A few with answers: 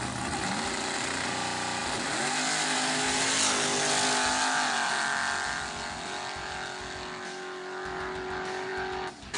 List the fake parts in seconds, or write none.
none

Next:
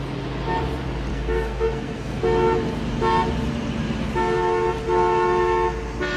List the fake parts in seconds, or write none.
1.1-2.2 (codec, SNAC)

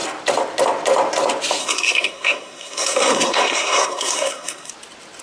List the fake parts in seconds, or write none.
1.6-4.7 (codec, SNAC)

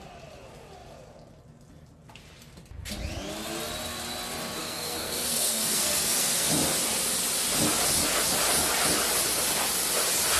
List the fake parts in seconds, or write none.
4.6-6.5 (codec, SNAC)

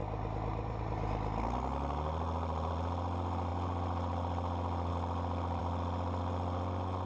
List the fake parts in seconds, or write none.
none